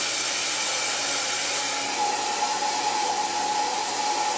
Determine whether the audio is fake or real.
real